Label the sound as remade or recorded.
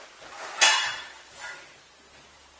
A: recorded